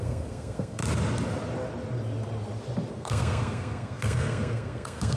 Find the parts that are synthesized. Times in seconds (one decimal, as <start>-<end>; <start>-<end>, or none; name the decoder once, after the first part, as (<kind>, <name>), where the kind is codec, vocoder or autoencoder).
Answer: 0.0-0.8 (codec, SNAC); 2.9-5.2